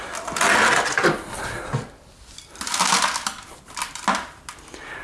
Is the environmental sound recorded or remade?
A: recorded